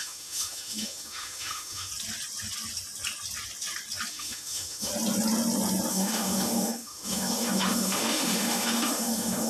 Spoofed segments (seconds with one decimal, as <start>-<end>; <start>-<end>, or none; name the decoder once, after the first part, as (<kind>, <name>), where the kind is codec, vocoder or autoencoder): 0.0-1.9 (autoencoder, DAC-VAE); 4.1-4.9; 5.9-9.5